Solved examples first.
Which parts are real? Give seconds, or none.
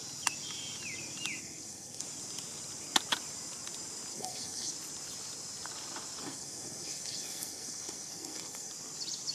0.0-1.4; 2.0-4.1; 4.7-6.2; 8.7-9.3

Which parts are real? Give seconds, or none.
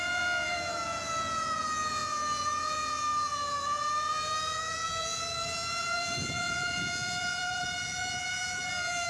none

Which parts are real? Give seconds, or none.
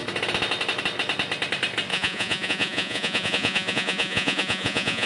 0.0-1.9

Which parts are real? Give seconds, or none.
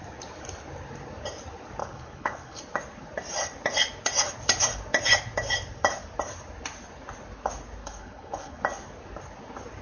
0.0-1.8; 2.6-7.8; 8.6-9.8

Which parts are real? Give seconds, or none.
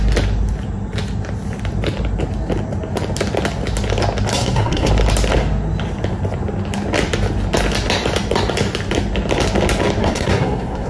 0.0-4.3; 4.9-10.0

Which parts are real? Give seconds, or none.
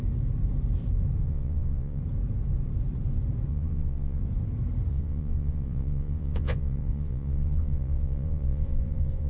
0.0-1.2; 2.0-3.5; 4.2-4.9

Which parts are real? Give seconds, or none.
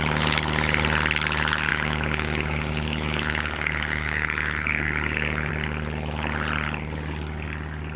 0.0-1.7; 5.5-8.0